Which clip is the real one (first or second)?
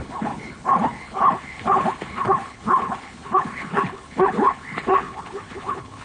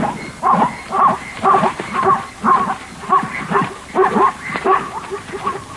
second